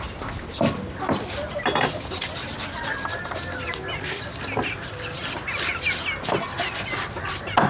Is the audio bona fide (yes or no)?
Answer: yes